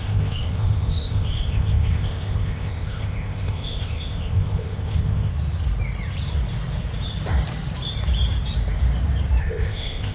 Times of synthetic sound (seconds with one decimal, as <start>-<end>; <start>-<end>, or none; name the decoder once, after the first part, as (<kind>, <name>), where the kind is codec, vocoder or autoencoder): 0.0-5.3 (codec, ZipCodec); 9.4-10.1